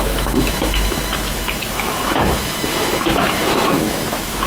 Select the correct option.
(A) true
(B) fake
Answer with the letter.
B